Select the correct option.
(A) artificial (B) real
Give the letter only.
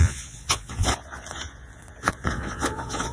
A